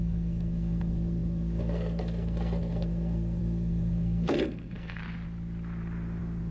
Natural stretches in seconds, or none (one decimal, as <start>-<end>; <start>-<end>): 5.0-6.5